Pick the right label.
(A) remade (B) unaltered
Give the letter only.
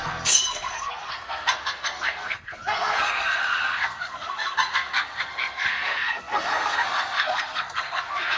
A